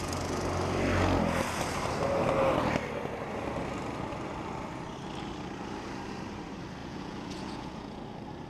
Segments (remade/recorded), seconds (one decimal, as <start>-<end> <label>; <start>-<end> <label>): 0.0-6.8 recorded; 6.8-8.0 remade; 8.0-8.5 recorded